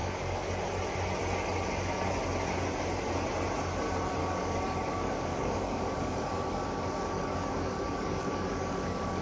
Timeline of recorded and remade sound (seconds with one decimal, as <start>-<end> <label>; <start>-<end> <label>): 0.0-0.5 remade; 0.5-4.2 recorded; 4.2-9.2 remade